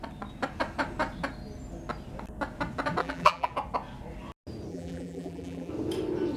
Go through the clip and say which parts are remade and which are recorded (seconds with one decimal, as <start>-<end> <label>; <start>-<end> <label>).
0.0-3.0 recorded; 3.0-3.5 remade; 3.5-4.7 recorded; 4.7-5.7 remade; 5.7-6.4 recorded